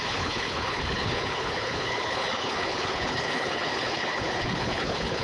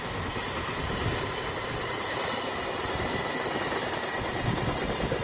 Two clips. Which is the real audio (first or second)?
second